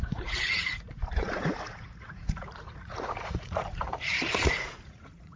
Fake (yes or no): yes